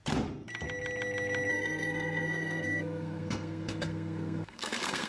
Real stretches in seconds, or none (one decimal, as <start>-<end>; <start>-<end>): 0.0-1.5